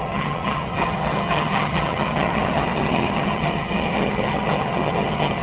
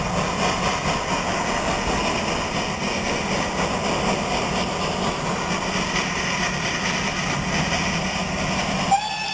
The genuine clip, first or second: second